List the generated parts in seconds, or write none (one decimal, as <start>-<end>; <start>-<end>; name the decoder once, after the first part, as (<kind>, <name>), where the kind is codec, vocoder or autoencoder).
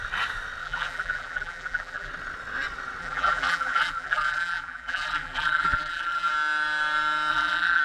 0.6-2.1 (vocoder, BigVGAN v2); 3.0-6.3; 7.3-7.8